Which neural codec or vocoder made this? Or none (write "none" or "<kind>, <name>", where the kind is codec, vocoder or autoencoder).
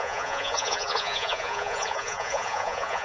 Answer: vocoder, Vocos